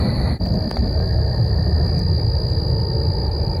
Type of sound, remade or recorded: recorded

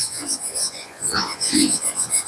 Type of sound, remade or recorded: remade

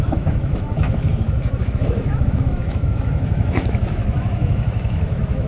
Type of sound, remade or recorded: remade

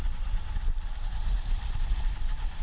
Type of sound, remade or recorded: remade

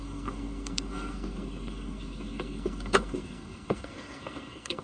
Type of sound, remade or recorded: remade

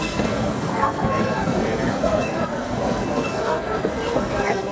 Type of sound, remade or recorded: remade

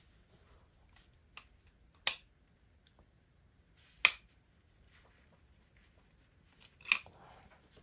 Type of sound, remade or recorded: recorded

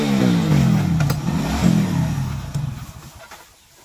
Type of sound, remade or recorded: recorded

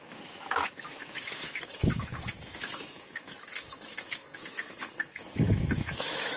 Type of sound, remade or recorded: remade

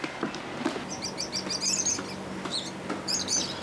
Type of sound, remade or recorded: recorded